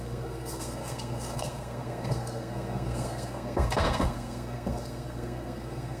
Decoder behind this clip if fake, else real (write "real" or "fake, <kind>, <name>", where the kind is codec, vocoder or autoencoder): fake, codec, SNAC